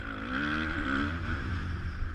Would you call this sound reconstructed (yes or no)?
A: no